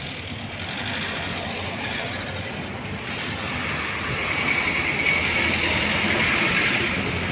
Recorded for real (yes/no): yes